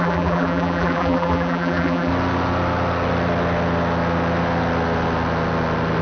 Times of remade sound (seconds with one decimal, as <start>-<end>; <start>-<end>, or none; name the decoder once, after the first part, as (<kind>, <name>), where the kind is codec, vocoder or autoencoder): 0.0-2.1 (vocoder, BigVGAN v2)